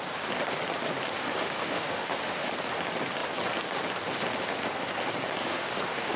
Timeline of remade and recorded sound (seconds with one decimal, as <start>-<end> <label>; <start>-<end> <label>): 0.0-1.2 recorded; 1.2-2.5 remade; 2.5-5.4 recorded; 5.4-6.2 remade